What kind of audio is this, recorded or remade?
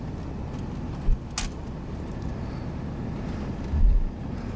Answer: recorded